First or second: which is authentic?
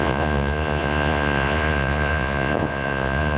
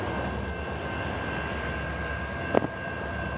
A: second